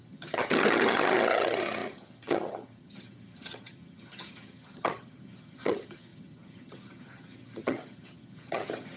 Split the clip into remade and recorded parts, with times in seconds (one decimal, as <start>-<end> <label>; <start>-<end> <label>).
0.0-9.0 remade